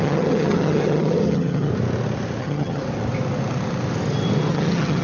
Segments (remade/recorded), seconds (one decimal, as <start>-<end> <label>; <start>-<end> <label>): 0.0-1.7 remade; 1.7-2.4 recorded; 2.4-2.8 remade; 2.8-4.5 recorded; 4.5-5.0 remade